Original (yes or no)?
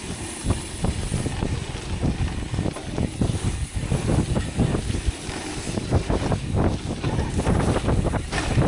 yes